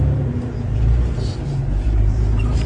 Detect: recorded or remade remade